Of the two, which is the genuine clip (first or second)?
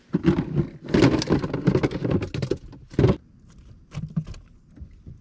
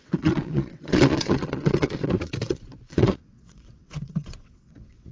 first